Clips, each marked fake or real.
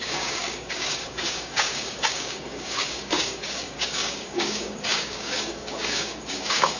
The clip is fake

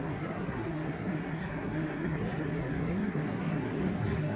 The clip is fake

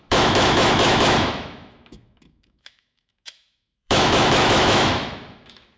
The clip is fake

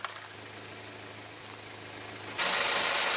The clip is real